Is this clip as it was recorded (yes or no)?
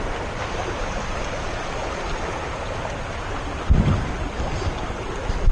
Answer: yes